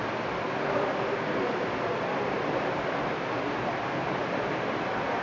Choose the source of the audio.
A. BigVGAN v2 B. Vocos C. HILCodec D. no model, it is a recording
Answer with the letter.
A